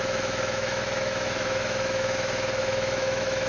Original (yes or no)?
no